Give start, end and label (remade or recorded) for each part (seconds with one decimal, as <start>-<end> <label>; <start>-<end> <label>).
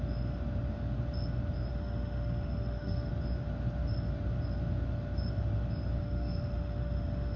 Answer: 0.0-1.7 recorded; 1.7-3.1 remade; 3.1-6.0 recorded; 6.0-7.4 remade